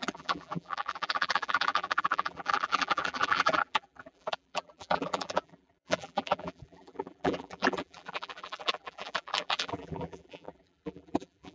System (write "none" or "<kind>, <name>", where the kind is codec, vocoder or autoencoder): vocoder, BigVGAN v2